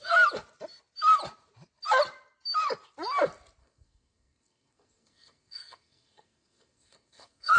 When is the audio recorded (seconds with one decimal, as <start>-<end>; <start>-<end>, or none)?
0.0-3.6